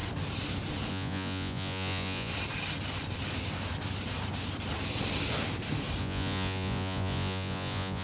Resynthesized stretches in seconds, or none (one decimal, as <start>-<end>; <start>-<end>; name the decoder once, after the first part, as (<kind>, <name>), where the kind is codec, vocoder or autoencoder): 0.9-2.3 (vocoder, Vocos); 6.0-8.0